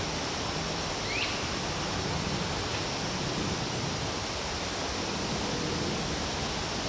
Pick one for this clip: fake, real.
real